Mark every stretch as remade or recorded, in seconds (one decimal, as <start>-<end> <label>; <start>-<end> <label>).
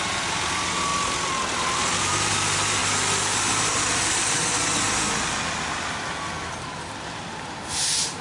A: 0.0-0.9 remade; 0.9-2.0 recorded; 2.0-2.8 remade; 2.8-7.7 recorded; 7.7-8.2 remade